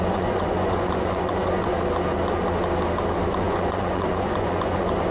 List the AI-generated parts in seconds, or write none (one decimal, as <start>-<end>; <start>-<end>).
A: 0.0-1.7; 3.3-5.1